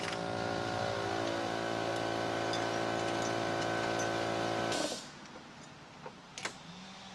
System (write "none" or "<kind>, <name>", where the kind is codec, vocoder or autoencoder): none